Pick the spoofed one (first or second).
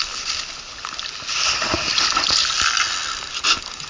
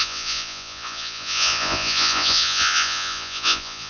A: second